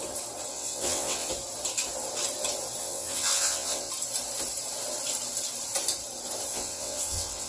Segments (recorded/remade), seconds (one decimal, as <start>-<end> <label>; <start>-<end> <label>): 0.0-0.5 recorded; 0.5-1.3 remade; 1.3-2.8 recorded; 2.8-3.9 remade; 3.9-6.5 recorded; 6.5-7.5 remade